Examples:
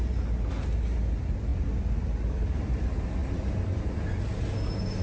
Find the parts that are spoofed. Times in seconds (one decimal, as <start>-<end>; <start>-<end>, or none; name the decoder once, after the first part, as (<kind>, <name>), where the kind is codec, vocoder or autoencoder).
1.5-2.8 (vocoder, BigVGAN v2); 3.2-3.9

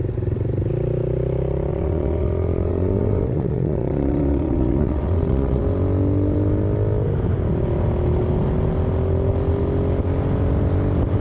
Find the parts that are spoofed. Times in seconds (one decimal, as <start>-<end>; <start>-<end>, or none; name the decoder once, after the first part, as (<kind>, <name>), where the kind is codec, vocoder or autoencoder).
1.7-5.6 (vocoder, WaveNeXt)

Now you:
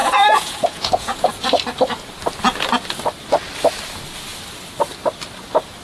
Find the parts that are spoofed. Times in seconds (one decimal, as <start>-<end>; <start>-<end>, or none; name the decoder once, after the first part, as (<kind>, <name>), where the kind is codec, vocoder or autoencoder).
0.0-1.3 (vocoder, Vocos)